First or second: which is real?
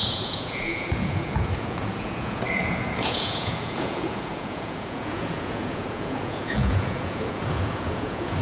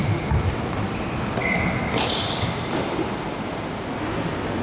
second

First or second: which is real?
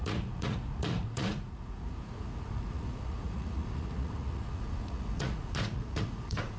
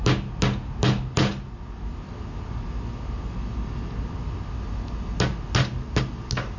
second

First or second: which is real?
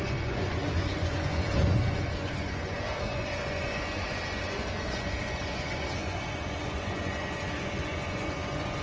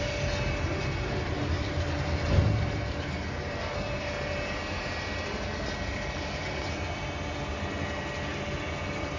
second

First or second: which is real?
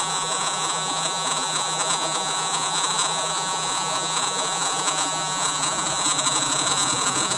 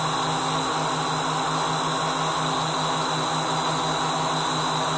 second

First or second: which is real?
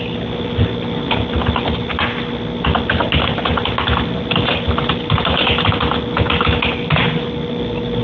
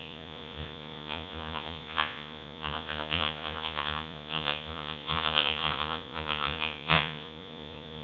first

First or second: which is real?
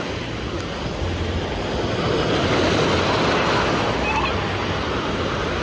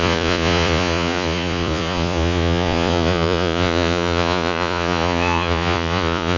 first